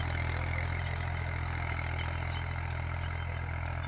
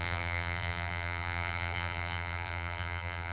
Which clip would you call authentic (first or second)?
first